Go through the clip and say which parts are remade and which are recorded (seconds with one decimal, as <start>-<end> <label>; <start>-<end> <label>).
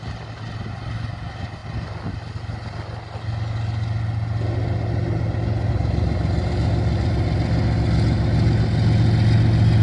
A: 0.0-9.8 recorded